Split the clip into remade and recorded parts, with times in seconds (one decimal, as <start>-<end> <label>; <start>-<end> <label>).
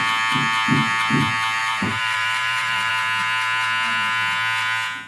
0.0-1.6 recorded; 1.6-2.9 remade; 2.9-5.1 recorded